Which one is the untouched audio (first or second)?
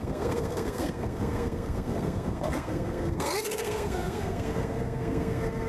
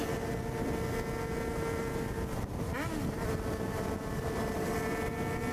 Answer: second